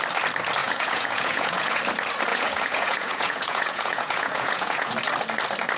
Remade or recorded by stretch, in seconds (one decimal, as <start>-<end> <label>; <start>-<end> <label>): 0.0-0.6 recorded; 0.6-1.8 remade; 1.8-2.3 recorded; 2.3-4.9 remade; 4.9-5.8 recorded